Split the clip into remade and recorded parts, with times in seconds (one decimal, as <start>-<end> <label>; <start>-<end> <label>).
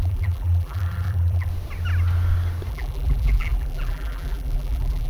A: 0.0-1.5 remade; 1.5-2.7 recorded; 2.7-5.1 remade